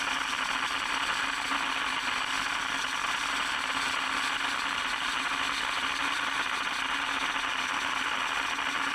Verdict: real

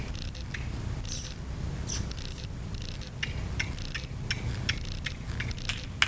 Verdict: real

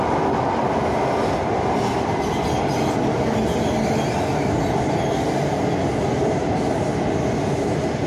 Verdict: real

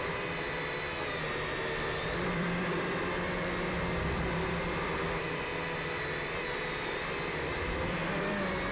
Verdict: fake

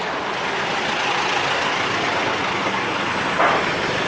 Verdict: real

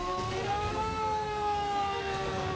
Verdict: fake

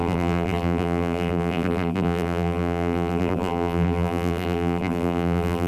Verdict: fake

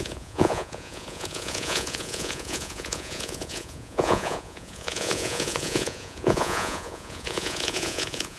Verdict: fake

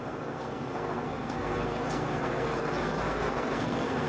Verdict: fake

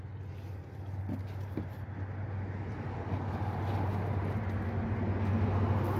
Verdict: real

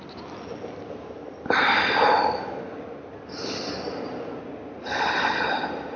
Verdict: real